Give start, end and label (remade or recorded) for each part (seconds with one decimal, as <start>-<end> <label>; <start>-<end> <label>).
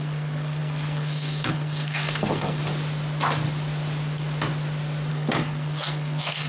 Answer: 0.0-2.6 remade; 2.6-5.1 recorded; 5.1-6.5 remade